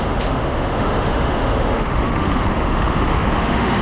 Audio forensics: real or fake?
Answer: fake